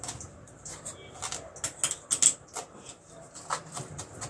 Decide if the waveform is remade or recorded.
recorded